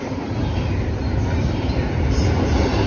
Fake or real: real